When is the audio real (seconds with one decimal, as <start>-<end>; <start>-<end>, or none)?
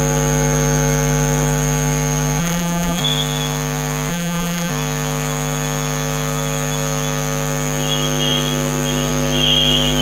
0.0-2.4; 3.0-4.1; 4.7-10.0